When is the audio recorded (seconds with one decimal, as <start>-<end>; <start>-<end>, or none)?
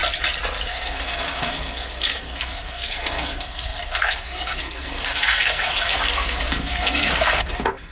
0.0-0.7